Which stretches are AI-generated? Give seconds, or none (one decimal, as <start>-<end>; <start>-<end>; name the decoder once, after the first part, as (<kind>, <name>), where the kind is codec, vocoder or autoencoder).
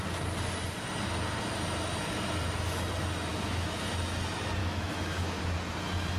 3.3-3.9 (autoencoder, DAC-VAE); 4.6-5.4